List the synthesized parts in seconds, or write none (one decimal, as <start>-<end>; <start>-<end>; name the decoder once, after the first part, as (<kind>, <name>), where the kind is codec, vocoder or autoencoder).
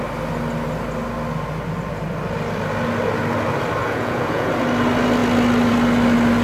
3.8-4.5 (vocoder, Vocos)